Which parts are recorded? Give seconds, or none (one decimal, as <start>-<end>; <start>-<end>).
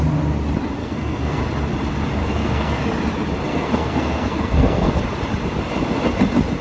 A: 0.0-0.8; 1.4-2.2; 2.8-3.5; 5.0-6.6